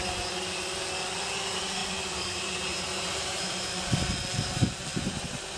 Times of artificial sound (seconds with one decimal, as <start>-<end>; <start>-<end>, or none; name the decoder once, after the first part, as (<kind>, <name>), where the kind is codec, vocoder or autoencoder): 1.8-3.9 (vocoder, BigVGAN v2); 4.9-5.6